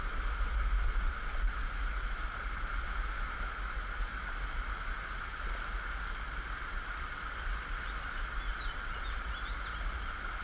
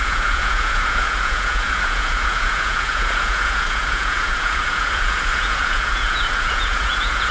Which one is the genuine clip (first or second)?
first